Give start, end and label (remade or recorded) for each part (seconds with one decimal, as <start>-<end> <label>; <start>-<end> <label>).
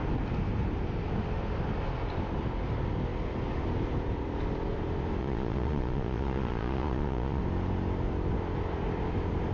0.0-5.2 recorded; 5.2-7.4 remade; 7.4-9.5 recorded